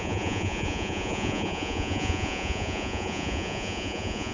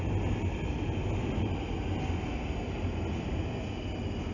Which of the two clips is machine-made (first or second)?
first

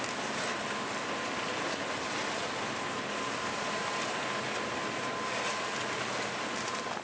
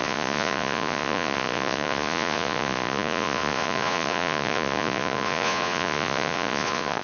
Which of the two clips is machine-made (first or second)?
second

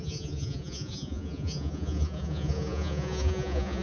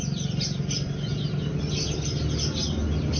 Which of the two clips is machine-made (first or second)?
first